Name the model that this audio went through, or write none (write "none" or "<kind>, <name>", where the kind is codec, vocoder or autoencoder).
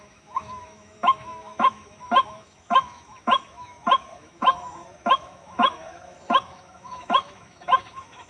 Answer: autoencoder, DAC-VAE